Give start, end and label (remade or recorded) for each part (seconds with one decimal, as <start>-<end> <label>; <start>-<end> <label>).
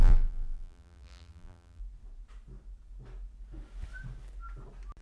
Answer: 0.0-1.8 remade; 1.8-5.0 recorded